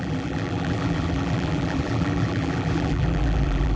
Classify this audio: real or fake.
fake